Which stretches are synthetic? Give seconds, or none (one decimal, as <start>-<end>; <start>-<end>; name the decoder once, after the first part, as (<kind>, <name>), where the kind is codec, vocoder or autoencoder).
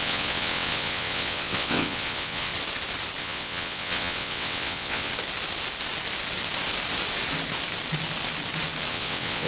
0.0-2.5 (vocoder, WaveNeXt); 3.2-5.1; 8.9-9.5